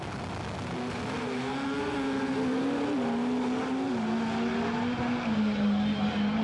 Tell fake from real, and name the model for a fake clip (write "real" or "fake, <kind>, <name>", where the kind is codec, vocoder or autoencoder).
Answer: real